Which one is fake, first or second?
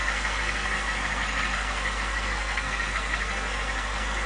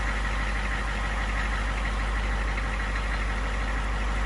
first